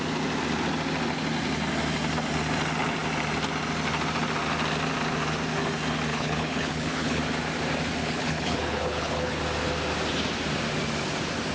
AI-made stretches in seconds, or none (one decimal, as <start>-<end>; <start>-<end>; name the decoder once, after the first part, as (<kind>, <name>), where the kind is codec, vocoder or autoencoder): 6.1-7.2 (codec, HILCodec); 8.0-9.4